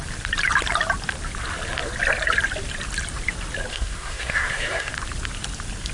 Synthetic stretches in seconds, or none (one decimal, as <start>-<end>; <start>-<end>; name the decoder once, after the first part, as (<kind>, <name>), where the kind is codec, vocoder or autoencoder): 3.7-4.9 (codec, SNAC)